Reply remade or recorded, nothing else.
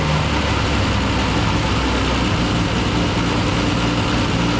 recorded